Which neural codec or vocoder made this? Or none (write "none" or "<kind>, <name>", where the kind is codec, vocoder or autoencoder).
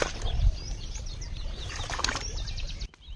none